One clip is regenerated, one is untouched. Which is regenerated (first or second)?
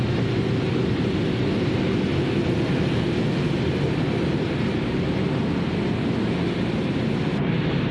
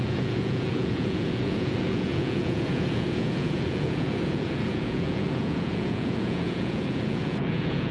second